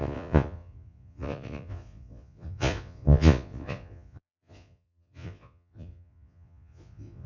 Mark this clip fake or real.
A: fake